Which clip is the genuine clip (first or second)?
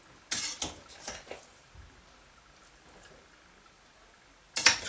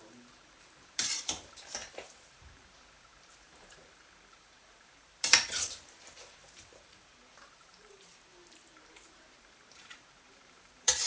first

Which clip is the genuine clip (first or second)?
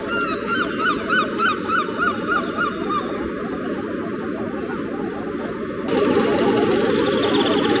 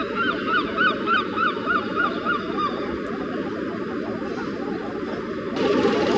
first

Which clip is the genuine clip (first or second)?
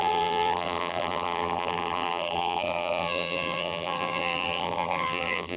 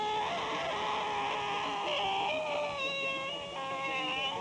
second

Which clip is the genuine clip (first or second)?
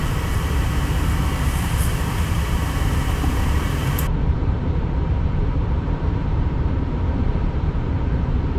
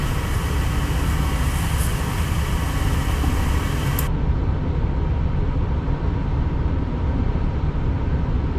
second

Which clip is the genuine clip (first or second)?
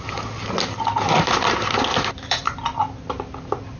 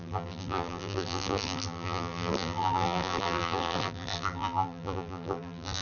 first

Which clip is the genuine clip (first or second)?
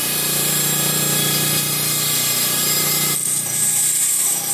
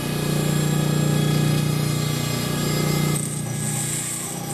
second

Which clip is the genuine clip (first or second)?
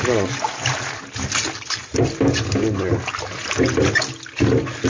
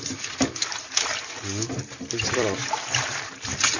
first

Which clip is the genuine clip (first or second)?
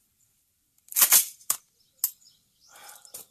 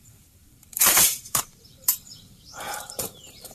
first